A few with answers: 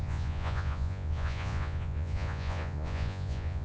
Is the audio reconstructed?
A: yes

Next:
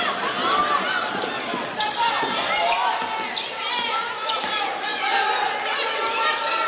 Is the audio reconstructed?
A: no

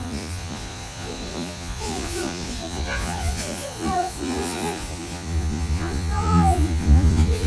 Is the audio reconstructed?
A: yes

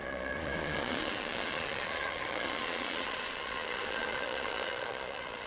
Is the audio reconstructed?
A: yes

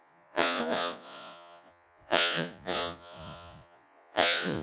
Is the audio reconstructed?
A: yes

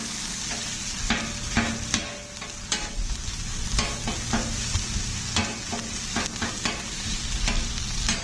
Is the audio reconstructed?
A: no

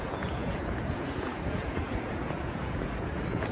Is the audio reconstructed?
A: yes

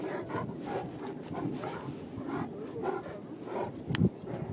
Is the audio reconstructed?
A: no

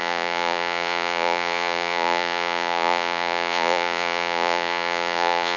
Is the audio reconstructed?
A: yes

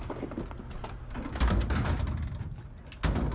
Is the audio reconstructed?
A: no